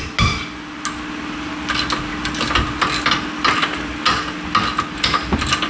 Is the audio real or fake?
real